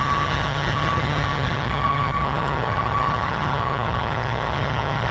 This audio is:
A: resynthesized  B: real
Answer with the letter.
A